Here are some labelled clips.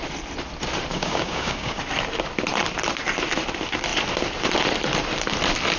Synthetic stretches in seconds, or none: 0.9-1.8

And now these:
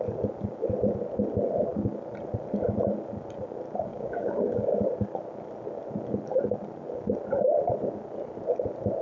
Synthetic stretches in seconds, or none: 3.9-4.8

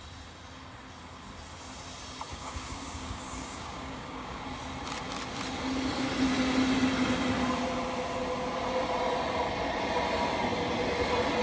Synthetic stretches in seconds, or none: 2.3-4.4

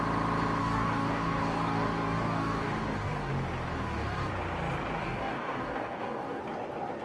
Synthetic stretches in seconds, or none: 0.6-3.3; 3.7-4.3; 5.0-6.4

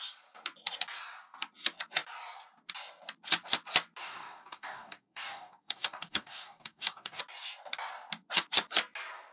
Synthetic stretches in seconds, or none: 4.0-7.2

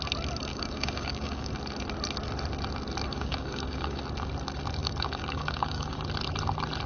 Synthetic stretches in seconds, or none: 0.5-1.5; 3.1-4.0; 4.8-6.0